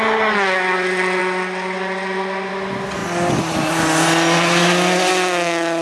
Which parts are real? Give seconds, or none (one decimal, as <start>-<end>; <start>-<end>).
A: 0.0-5.8